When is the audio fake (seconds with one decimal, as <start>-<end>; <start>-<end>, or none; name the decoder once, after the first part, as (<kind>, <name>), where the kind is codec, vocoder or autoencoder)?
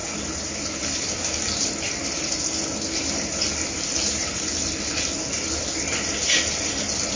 none